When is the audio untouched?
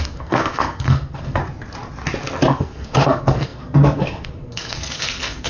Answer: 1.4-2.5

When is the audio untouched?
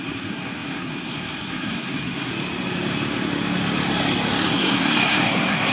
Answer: 2.3-4.5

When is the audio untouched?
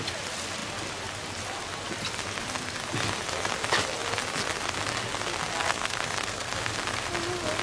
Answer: 0.0-5.7; 6.5-7.6